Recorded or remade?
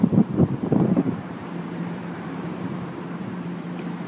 remade